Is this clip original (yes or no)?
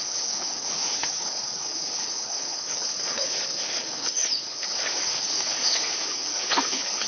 no